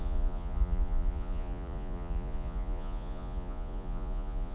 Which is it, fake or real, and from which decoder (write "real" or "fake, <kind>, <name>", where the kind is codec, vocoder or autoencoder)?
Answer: fake, vocoder, Vocos